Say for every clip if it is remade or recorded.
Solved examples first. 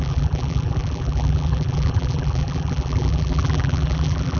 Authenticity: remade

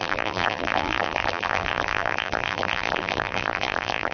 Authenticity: remade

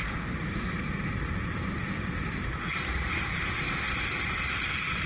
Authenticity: remade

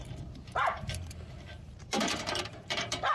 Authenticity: remade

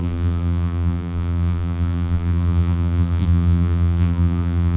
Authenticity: remade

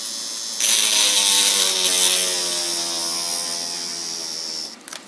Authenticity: recorded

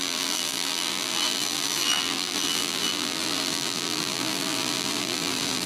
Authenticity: remade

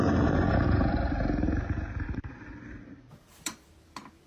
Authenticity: remade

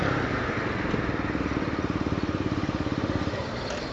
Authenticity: remade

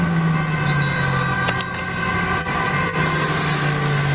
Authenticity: recorded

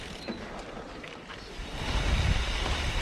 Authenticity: remade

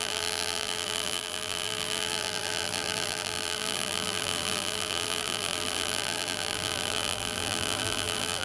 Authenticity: remade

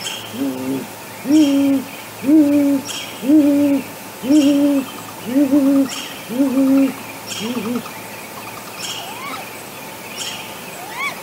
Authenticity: recorded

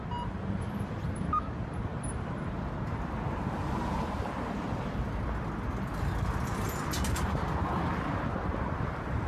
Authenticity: recorded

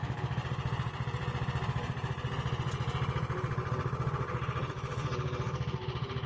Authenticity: recorded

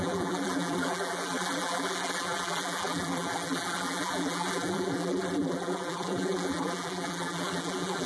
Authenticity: remade